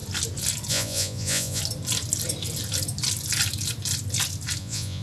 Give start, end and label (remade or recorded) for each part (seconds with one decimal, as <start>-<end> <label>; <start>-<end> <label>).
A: 0.0-0.7 recorded; 0.7-1.6 remade; 1.6-4.6 recorded; 4.6-5.0 remade